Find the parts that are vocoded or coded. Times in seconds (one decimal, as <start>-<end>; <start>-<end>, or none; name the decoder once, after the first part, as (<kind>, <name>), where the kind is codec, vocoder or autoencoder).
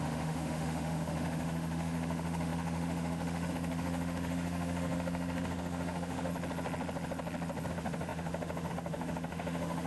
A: 0.0-6.3 (autoencoder, DAC-VAE); 7.7-9.9